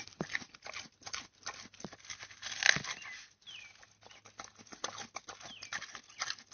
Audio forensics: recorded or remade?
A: recorded